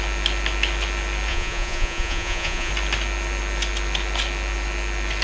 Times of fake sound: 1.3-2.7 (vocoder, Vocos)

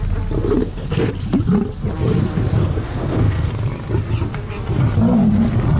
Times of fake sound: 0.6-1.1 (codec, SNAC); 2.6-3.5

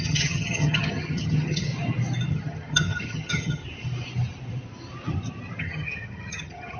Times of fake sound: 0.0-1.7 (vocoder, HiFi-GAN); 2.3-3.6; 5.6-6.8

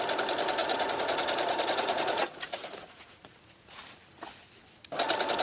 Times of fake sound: 0.6-3.8 (vocoder, Vocos)

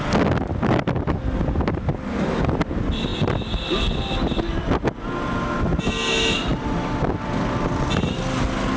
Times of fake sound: none

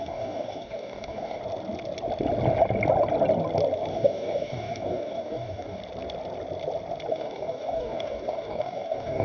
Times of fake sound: 0.0-1.4 (codec, DAC); 3.9-5.8; 7.1-9.2